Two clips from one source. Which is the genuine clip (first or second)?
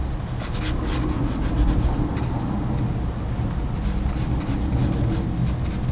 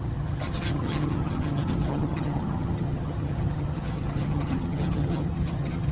first